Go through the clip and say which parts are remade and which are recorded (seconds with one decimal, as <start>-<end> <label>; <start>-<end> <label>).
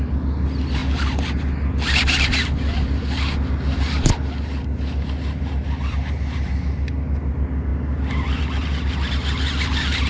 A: 0.0-10.1 recorded